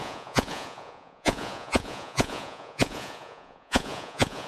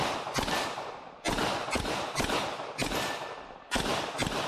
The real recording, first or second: second